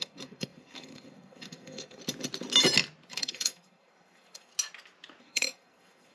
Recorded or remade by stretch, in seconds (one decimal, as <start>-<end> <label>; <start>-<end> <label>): 0.0-2.0 remade; 2.0-3.1 recorded; 3.1-4.5 remade; 4.5-5.2 recorded; 5.2-6.1 remade